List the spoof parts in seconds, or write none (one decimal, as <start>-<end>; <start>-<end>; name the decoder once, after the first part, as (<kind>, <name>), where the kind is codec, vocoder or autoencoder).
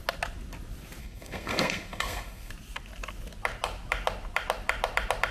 1.0-2.5 (codec, SNAC)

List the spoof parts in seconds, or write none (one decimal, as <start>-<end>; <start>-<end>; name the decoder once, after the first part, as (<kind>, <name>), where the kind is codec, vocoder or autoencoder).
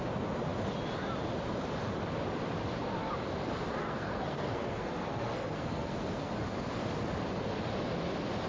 3.8-6.3 (codec, SNAC)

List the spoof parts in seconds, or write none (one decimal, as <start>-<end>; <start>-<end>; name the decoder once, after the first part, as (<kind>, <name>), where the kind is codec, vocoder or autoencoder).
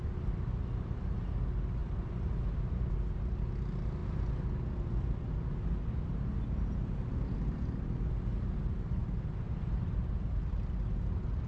none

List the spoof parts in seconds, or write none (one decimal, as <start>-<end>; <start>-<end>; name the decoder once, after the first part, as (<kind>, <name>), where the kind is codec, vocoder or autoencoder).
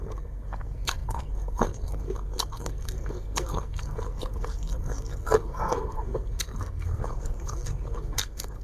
0.0-8.6 (codec, SNAC)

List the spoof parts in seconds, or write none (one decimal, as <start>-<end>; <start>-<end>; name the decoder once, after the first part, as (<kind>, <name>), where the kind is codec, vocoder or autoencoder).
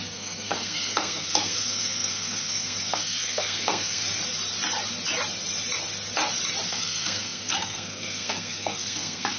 0.0-4.0 (codec, SNAC); 6.7-9.4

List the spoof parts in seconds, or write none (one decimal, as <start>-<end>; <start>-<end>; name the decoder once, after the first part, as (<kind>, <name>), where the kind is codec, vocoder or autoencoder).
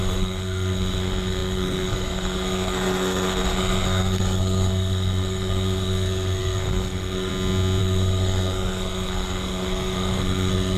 0.0-7.3 (codec, SNAC); 7.8-10.8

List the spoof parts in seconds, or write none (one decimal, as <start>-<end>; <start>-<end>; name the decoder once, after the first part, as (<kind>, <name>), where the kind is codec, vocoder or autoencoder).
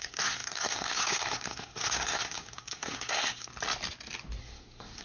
0.0-3.5 (codec, SNAC); 4.4-5.0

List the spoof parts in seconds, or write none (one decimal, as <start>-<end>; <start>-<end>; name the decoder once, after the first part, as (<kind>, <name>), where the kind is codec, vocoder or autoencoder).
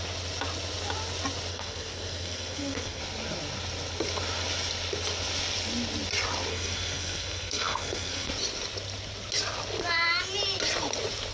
1.5-3.0 (codec, SNAC); 6.5-8.3